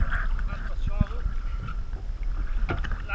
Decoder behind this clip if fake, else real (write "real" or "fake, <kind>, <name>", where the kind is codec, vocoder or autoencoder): real